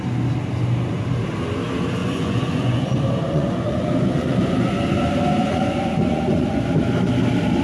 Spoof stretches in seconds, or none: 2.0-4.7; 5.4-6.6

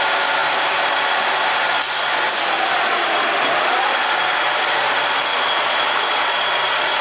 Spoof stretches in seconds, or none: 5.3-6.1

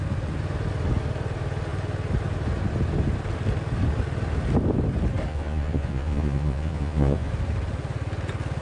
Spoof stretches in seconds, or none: 5.3-7.3

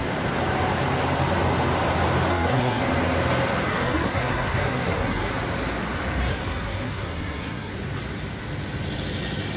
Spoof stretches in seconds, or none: 2.3-2.8; 3.7-5.3; 6.3-7.7